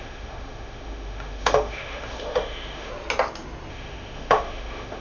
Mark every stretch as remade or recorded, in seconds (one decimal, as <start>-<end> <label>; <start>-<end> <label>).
0.0-2.9 remade; 2.9-3.7 recorded; 3.7-5.0 remade